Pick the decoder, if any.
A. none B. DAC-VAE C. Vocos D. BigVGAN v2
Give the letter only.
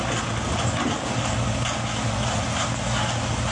A